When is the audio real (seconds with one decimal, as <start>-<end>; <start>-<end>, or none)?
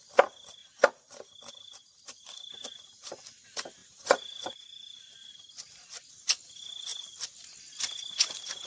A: 0.0-3.8; 5.3-8.7